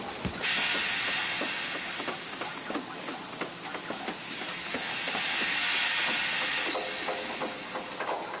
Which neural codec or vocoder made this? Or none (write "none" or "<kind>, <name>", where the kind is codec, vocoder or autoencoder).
none